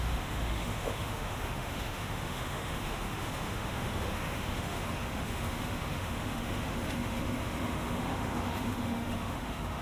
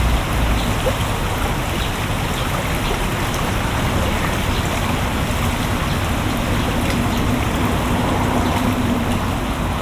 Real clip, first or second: second